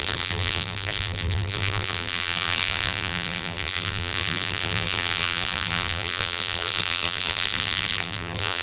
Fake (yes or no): yes